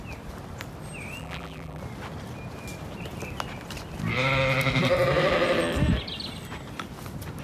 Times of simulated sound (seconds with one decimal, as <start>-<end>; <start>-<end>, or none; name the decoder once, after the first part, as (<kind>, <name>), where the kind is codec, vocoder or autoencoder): 1.2-1.8 (vocoder, BigVGAN v2)